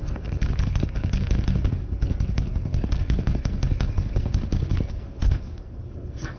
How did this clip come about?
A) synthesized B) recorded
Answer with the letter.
A